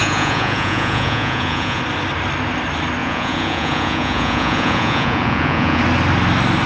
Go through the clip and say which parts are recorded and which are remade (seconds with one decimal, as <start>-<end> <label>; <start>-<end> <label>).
0.0-1.8 remade; 1.8-3.0 recorded; 3.0-5.8 remade; 5.8-6.7 recorded